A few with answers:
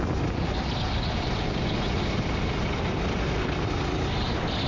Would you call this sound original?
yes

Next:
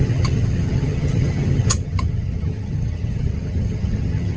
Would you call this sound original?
no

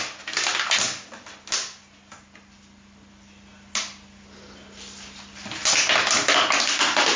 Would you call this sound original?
yes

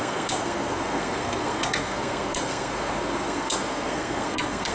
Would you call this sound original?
no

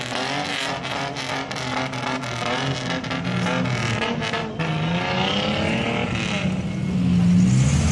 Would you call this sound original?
yes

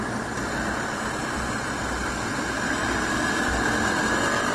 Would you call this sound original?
yes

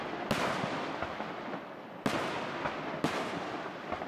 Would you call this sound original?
yes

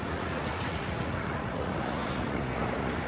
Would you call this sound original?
no